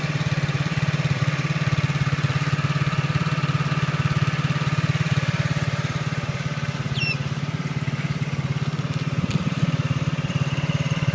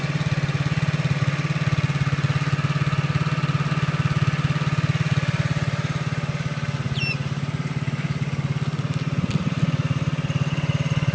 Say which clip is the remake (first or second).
first